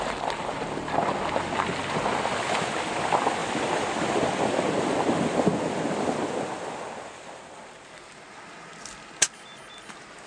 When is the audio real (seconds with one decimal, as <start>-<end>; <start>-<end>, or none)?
0.0-3.4; 4.5-10.3